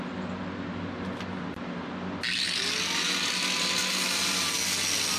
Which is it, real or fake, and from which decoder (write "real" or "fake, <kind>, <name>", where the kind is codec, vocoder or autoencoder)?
real